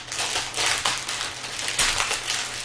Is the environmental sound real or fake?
real